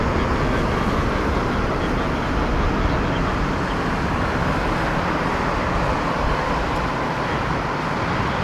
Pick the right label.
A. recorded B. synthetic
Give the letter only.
A